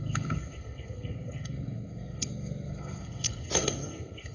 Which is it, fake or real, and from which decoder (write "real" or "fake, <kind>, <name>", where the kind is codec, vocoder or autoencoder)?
fake, codec, SNAC